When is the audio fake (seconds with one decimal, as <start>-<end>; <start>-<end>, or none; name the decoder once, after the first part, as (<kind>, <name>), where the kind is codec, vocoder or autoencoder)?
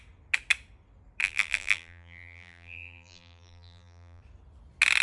1.2-4.2 (vocoder, BigVGAN v2)